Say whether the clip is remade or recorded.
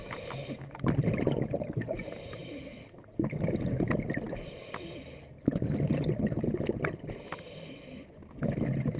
recorded